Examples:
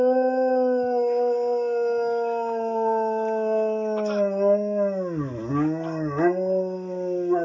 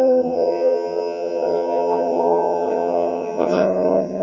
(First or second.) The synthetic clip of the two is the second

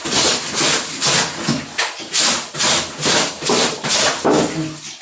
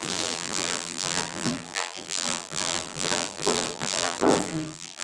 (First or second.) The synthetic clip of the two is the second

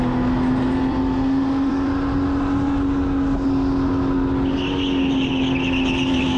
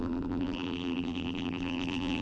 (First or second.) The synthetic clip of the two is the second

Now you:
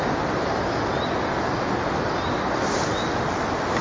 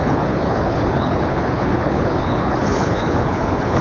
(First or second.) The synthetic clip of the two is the second